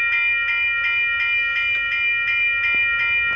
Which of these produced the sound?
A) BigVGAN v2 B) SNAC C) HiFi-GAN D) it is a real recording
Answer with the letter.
D